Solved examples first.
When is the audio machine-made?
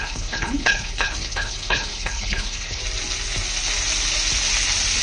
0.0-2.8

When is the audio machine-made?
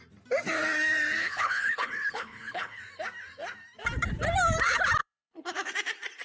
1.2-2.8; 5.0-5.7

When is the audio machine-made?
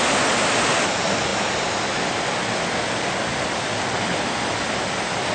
none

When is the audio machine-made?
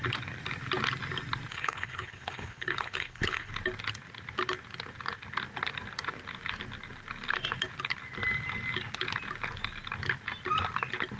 1.5-3.5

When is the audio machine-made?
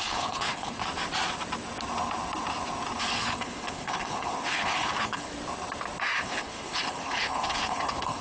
0.0-0.8; 3.0-5.3; 6.2-8.2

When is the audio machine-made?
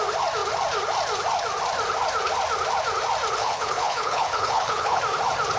3.4-5.0